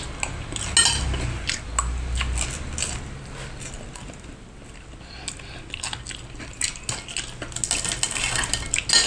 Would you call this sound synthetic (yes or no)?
no